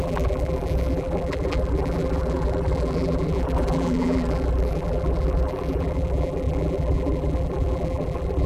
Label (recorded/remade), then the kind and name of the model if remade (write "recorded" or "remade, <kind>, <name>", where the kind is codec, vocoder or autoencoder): remade, vocoder, BigVGAN v2